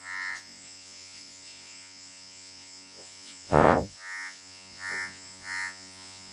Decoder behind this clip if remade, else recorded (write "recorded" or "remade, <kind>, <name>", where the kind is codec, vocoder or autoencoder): remade, vocoder, Vocos